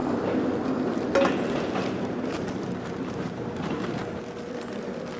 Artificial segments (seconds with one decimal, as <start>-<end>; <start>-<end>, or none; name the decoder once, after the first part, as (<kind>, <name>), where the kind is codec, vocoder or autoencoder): 2.0-4.0 (vocoder, BigVGAN v2)